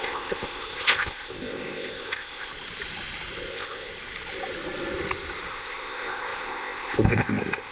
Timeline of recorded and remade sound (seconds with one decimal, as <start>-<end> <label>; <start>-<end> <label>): 0.0-2.5 remade; 2.5-3.5 recorded; 3.5-3.9 remade; 3.9-5.5 recorded; 5.5-7.7 remade